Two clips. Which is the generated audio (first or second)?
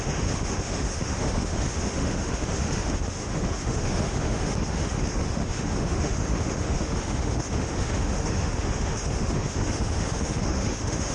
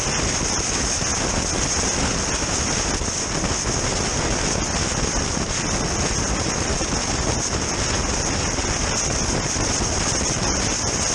first